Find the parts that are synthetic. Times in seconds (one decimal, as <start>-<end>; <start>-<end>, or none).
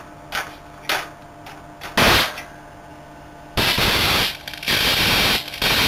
2.9-4.7